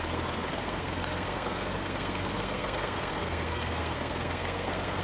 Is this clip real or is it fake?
fake